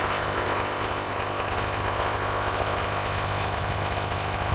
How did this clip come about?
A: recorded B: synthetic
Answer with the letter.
B